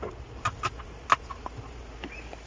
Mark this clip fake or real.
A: real